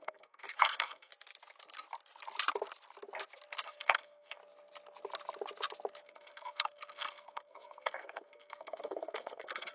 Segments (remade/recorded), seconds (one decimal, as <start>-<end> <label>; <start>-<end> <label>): 0.0-1.1 remade; 1.1-3.6 recorded; 3.6-4.4 remade; 4.4-6.0 recorded; 6.0-9.7 remade